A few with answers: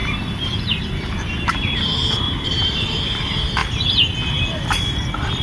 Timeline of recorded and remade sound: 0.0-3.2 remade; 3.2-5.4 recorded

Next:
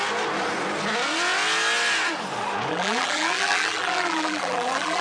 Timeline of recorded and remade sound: 0.0-2.7 recorded; 2.7-5.0 remade

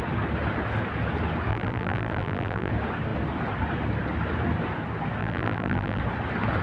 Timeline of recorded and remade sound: 0.0-1.5 recorded; 1.5-2.7 remade; 2.7-5.2 recorded; 5.2-6.0 remade; 6.0-6.6 recorded